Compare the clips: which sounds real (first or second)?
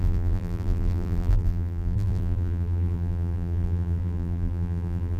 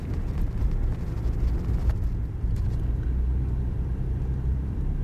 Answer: second